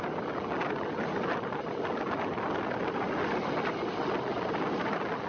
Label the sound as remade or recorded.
recorded